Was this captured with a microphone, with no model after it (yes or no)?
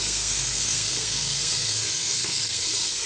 no